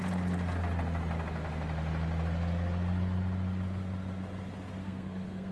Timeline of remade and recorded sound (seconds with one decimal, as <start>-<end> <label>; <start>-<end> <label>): 0.0-4.8 recorded; 4.8-5.5 remade